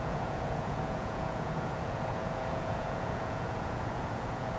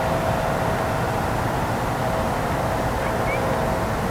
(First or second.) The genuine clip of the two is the second